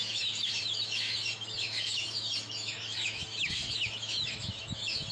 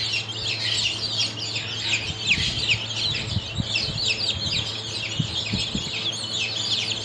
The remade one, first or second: first